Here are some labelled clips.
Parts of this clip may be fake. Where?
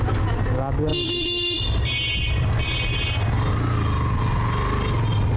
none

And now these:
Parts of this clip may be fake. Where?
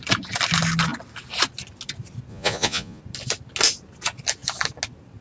2.3-3.0